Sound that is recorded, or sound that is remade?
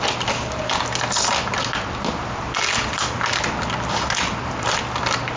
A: recorded